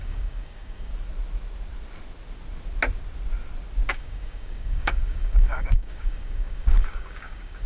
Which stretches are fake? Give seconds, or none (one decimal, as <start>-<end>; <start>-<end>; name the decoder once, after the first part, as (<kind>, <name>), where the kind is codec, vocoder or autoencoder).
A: 0.0-0.9 (codec, DAC); 3.9-7.7